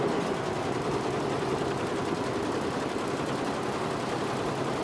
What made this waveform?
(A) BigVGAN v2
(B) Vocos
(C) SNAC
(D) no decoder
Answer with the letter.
D